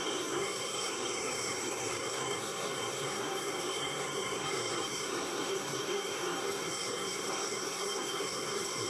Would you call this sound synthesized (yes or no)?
yes